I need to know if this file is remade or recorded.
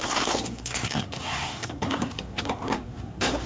remade